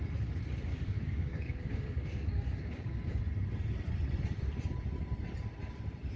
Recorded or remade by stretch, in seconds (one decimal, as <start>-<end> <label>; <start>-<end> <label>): 0.0-0.7 recorded; 0.7-3.2 remade; 3.2-6.2 recorded